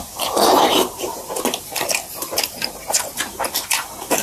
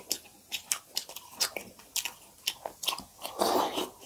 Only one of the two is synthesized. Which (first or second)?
first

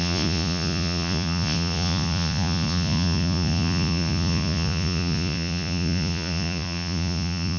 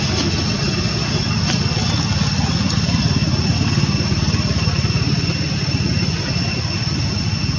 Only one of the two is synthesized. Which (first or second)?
first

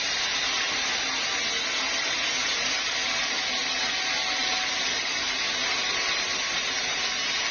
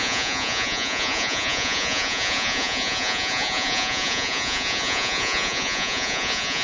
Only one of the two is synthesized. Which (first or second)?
second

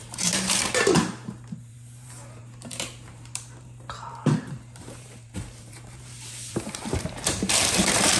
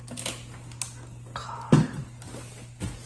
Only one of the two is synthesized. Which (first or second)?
first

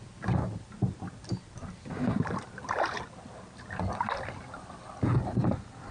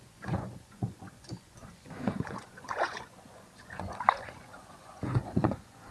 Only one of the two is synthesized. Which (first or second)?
second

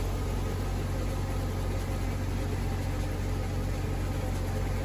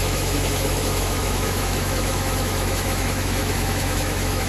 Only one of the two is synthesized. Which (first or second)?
second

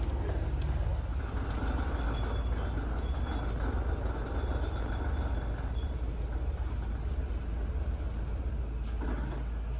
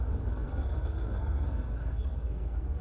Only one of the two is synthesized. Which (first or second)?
second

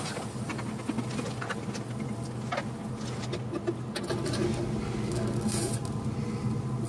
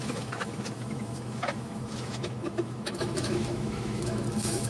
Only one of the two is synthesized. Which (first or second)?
second